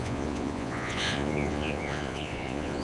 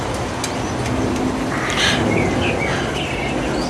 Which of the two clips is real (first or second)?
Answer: second